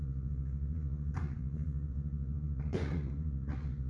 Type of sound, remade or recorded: remade